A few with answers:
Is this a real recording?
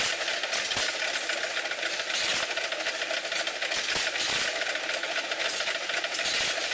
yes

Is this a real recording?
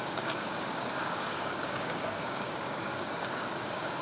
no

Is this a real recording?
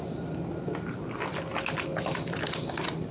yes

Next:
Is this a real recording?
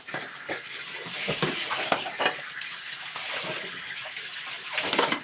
yes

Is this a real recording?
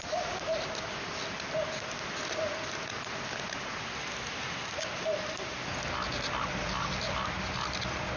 yes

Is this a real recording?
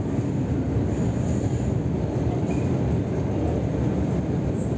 yes